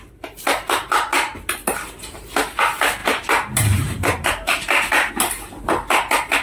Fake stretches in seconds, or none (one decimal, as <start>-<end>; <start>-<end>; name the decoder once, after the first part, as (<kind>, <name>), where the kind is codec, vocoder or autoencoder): 3.0-5.1 (vocoder, BigVGAN v2)